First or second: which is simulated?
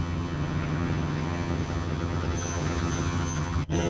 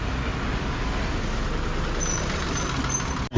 first